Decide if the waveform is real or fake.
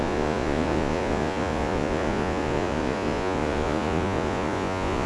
fake